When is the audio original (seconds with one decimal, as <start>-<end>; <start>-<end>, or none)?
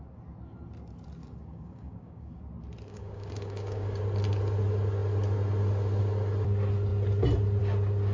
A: 0.0-1.2; 2.4-2.9; 4.0-8.1